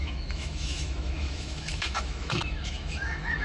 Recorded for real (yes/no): no